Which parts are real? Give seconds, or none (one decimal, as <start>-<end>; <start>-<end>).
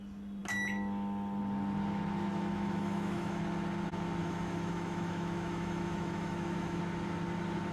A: 0.0-2.3; 3.4-4.2; 6.8-7.7